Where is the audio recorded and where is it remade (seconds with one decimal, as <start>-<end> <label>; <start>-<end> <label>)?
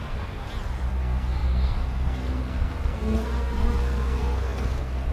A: 0.0-0.4 remade; 0.4-0.9 recorded; 0.9-5.1 remade